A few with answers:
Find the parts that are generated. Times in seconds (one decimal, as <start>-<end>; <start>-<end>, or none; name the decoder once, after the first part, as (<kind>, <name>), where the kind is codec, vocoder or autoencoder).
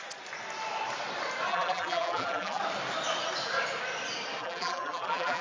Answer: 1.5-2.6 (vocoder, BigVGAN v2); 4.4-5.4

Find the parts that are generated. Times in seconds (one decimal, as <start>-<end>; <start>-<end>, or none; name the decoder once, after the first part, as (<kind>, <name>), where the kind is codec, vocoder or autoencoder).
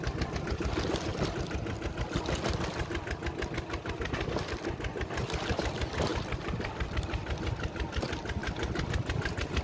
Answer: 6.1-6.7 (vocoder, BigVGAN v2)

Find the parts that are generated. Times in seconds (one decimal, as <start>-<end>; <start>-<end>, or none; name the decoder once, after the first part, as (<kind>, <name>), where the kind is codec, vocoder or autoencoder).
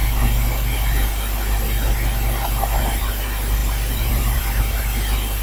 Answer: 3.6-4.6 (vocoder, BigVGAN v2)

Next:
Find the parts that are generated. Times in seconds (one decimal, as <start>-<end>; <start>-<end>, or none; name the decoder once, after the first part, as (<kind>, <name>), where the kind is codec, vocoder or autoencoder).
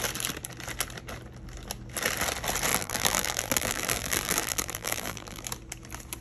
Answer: 2.7-5.4 (vocoder, BigVGAN v2)